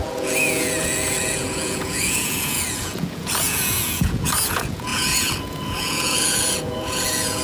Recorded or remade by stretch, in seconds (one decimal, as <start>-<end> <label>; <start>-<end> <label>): 0.0-7.4 remade